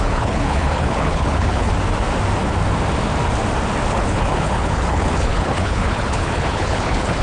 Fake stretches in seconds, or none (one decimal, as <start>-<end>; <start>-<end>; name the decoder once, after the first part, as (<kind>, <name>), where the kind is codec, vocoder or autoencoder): 0.0-1.7 (codec, HILCodec); 3.9-7.2